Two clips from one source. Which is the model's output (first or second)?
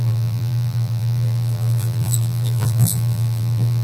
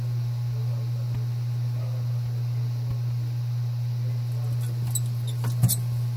first